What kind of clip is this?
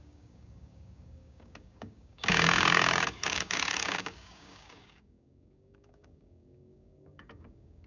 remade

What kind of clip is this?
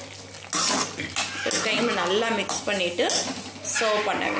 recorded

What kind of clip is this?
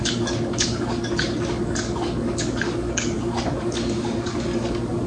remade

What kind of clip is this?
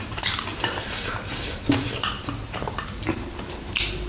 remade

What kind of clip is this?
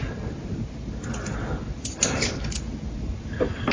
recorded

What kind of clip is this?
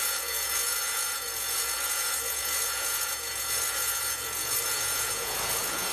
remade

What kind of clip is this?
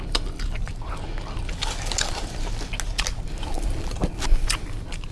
recorded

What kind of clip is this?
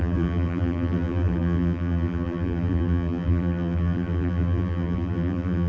remade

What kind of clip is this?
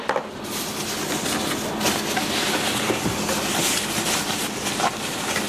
recorded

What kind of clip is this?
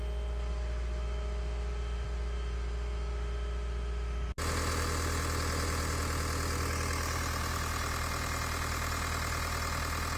recorded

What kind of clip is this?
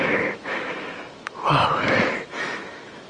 remade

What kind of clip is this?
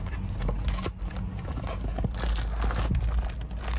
recorded